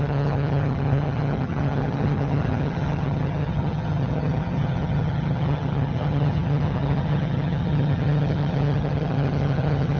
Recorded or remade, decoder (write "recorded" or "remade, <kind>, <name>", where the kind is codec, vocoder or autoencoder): remade, vocoder, HiFi-GAN